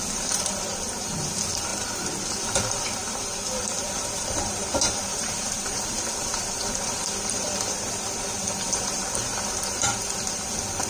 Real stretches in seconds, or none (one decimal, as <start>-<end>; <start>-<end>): none